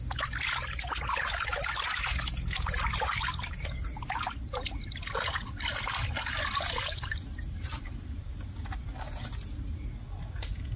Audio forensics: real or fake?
real